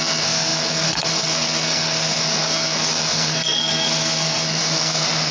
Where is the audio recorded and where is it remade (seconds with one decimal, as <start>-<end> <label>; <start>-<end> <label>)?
0.0-5.3 remade